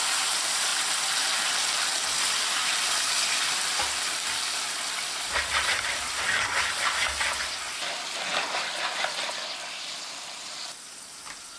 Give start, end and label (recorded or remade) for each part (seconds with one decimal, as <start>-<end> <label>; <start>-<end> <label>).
0.0-11.6 recorded